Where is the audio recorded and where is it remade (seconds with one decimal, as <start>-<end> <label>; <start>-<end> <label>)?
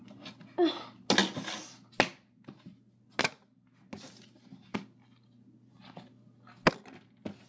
0.0-7.5 recorded